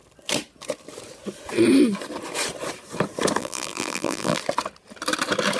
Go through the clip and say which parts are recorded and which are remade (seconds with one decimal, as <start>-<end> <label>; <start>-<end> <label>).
0.0-3.4 recorded; 3.4-4.4 remade; 4.4-5.6 recorded